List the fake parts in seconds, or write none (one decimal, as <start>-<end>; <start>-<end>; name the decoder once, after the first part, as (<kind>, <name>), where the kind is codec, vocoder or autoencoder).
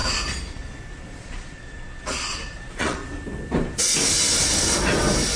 1.2-3.0 (vocoder, Vocos)